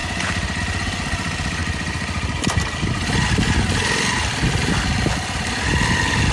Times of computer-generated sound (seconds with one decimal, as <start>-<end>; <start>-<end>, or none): 0.0-0.6